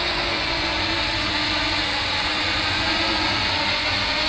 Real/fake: fake